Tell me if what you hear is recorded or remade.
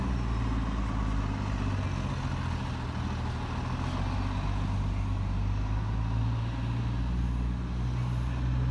recorded